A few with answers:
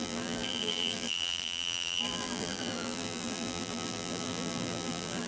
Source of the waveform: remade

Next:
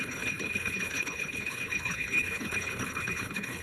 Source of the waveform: remade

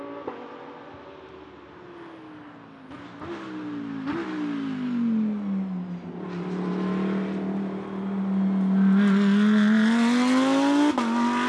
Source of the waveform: recorded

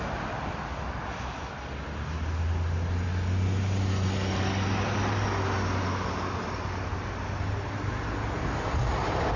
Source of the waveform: recorded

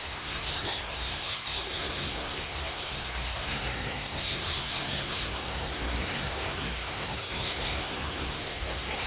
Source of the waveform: remade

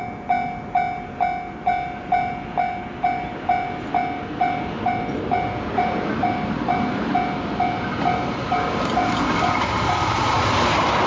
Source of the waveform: recorded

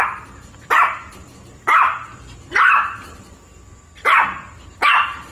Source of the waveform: remade